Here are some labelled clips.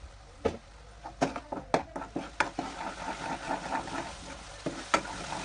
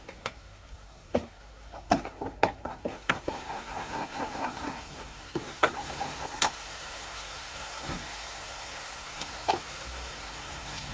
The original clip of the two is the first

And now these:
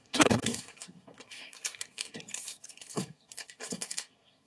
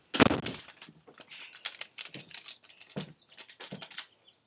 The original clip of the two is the second